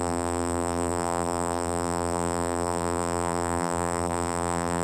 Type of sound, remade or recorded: remade